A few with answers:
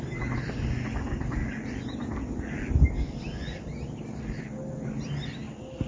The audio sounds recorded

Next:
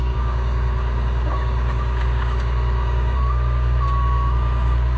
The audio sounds remade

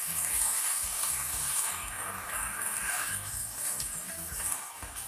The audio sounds remade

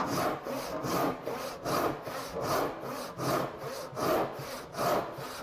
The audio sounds recorded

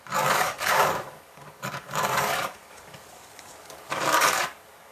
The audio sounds remade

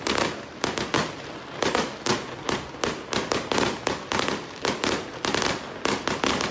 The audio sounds recorded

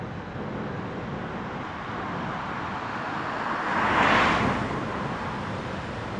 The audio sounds recorded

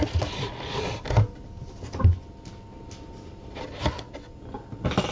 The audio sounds recorded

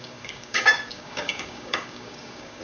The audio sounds remade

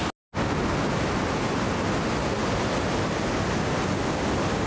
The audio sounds recorded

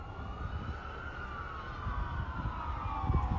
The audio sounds recorded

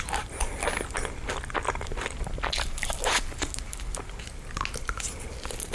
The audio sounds recorded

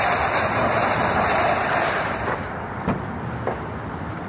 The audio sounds recorded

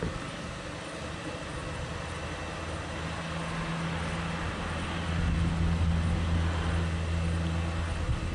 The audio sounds recorded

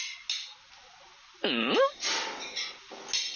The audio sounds recorded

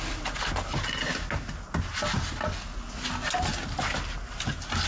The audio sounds recorded